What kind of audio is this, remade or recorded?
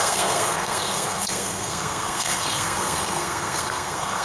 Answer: remade